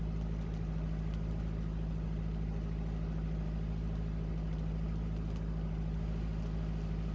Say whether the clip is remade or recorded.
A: recorded